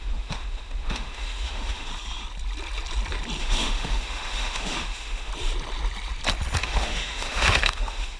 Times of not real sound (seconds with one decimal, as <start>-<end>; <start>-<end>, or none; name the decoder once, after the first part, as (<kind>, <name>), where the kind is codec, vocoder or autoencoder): 0.0-1.9 (autoencoder, DAC-VAE); 3.4-5.3; 6.6-8.2